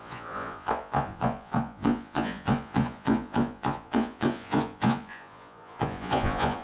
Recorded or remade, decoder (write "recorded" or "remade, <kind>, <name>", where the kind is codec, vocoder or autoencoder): remade, vocoder, Vocos